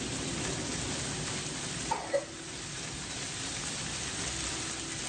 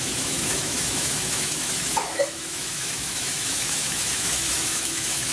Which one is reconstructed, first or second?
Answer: second